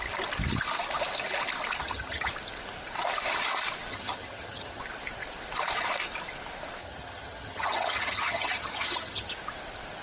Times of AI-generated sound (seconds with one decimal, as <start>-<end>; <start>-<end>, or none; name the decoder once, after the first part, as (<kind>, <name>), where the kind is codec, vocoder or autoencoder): 1.8-2.3 (vocoder, HiFi-GAN); 3.9-4.8; 6.8-9.3